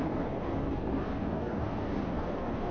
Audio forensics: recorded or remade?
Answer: remade